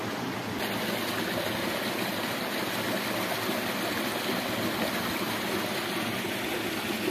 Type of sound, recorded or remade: recorded